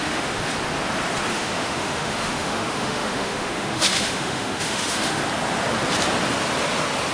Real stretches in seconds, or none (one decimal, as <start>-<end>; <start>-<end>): 0.5-1.3; 5.2-7.1